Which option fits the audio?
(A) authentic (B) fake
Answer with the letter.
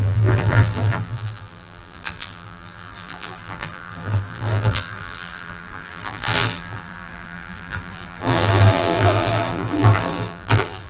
B